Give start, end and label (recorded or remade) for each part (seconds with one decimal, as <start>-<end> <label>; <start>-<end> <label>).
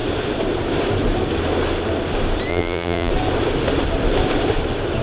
0.0-2.5 recorded; 2.5-3.1 remade; 3.1-5.0 recorded